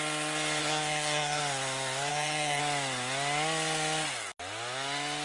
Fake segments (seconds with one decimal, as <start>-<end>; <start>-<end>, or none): 0.6-1.4; 2.1-2.6